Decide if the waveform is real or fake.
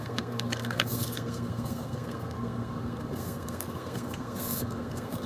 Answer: fake